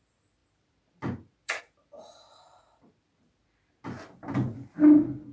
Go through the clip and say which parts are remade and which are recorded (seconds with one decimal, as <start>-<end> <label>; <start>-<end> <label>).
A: 0.0-5.3 recorded